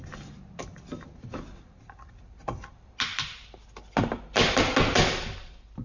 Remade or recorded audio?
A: recorded